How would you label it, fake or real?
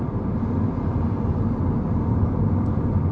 real